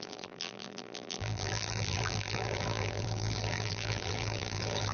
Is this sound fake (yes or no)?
yes